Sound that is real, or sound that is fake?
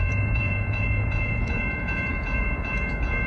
fake